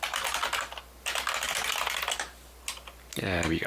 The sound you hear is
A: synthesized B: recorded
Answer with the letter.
B